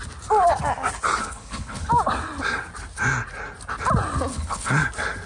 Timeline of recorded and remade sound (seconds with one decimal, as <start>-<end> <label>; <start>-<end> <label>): 0.0-1.2 recorded; 1.2-1.9 remade; 1.9-4.3 recorded; 4.3-4.8 remade; 4.8-5.3 recorded